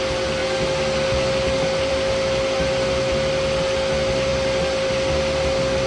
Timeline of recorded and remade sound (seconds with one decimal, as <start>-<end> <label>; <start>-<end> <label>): 0.0-5.9 recorded